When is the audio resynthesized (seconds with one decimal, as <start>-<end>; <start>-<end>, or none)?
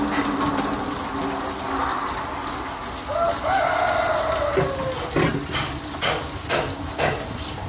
none